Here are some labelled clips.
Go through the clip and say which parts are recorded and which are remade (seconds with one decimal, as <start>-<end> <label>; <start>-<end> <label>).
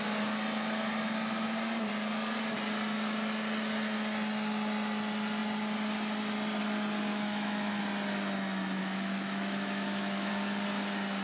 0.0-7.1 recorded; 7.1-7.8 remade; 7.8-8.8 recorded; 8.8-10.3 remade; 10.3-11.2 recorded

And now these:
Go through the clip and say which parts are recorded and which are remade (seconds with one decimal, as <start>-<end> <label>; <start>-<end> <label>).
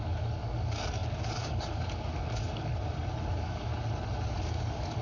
0.0-2.7 remade; 2.7-3.3 recorded; 3.3-3.7 remade; 3.7-4.4 recorded; 4.4-5.0 remade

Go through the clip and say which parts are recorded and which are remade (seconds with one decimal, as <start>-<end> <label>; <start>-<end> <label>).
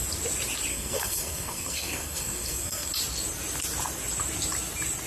0.0-0.7 recorded; 0.7-2.9 remade; 2.9-5.1 recorded